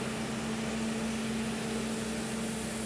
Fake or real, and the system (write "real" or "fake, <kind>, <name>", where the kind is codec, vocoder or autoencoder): real